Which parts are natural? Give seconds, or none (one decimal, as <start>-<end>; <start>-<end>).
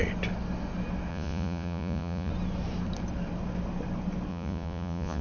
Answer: 0.0-1.1; 2.3-4.3